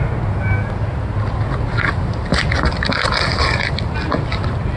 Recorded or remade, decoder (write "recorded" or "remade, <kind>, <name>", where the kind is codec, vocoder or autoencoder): recorded